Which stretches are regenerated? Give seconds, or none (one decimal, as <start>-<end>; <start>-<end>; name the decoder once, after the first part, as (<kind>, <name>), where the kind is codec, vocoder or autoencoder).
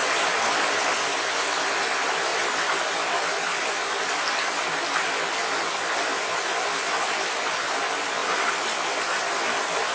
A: none